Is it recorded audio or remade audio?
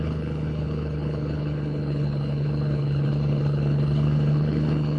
remade